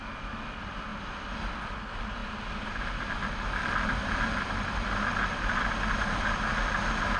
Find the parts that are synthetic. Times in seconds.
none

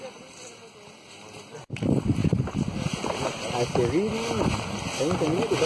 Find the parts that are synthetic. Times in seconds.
0.0-0.5 (vocoder, BigVGAN v2); 1.4-2.2